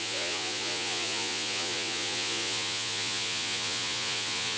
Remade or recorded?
remade